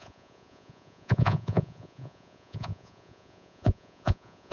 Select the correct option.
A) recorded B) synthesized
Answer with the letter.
B